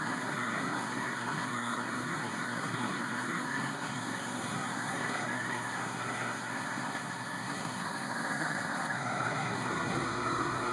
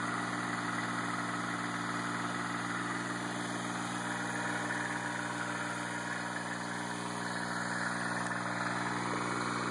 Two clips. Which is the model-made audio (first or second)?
first